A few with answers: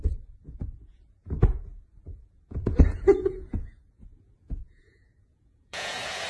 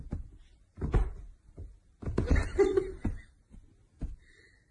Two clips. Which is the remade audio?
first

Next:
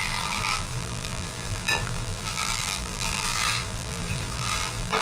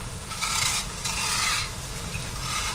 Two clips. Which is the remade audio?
first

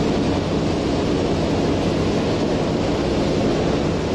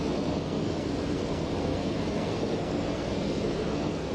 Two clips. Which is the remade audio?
second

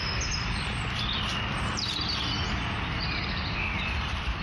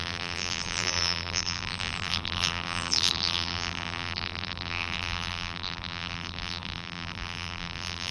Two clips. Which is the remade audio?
second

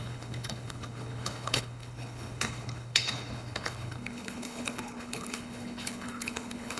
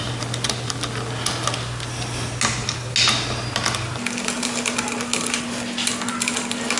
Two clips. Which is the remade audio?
first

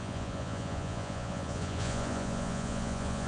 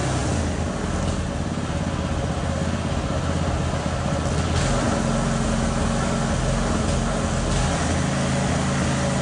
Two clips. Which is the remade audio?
first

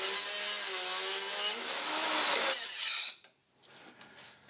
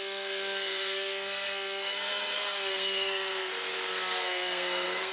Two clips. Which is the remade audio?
second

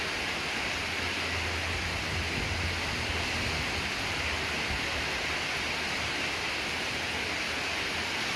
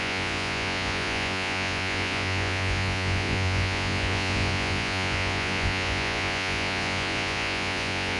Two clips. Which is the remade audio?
second